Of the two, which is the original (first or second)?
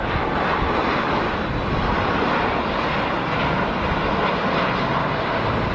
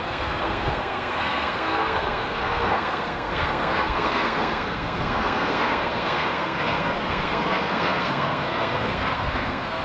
first